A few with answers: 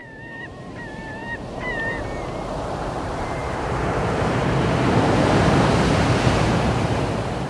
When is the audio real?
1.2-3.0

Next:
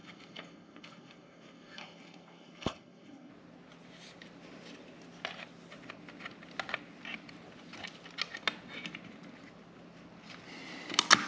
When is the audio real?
3.3-11.3